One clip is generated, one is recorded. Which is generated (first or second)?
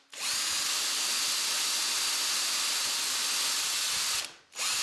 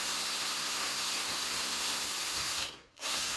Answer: second